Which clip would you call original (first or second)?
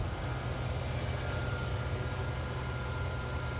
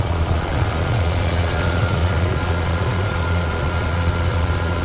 first